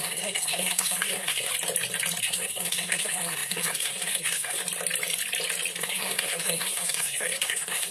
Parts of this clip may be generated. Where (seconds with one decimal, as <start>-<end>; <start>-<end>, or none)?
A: 0.0-1.5; 2.2-4.6; 5.8-7.9